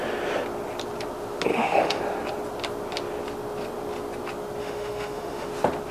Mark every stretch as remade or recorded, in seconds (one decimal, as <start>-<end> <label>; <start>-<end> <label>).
0.0-1.5 recorded; 1.5-2.0 remade; 2.0-4.6 recorded; 4.6-5.5 remade; 5.5-5.9 recorded